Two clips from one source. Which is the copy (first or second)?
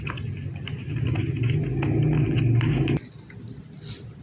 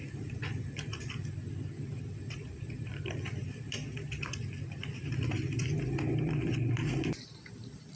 second